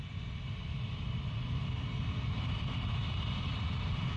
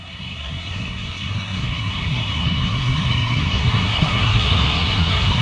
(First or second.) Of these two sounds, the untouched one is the first